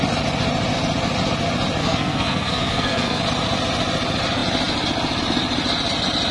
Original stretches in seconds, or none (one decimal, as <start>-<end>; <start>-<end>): 0.0-1.8; 3.2-6.3